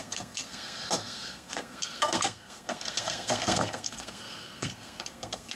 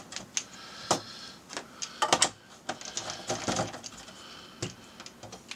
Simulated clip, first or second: first